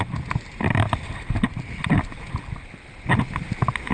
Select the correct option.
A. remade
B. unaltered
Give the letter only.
B